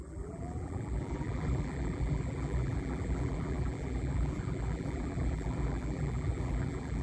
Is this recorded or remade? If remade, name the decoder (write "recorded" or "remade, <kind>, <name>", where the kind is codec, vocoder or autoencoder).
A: remade, vocoder, BigVGAN v2